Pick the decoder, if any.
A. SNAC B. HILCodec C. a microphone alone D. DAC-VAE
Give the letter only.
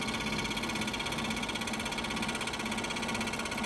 C